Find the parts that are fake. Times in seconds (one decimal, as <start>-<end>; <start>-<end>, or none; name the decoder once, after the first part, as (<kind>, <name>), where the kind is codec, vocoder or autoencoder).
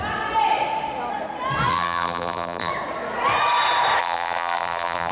1.7-2.7 (vocoder, BigVGAN v2); 4.0-5.1